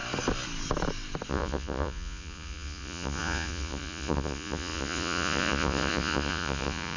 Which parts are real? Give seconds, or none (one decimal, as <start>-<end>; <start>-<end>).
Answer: 0.0-1.3